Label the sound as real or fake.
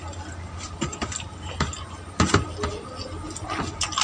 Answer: real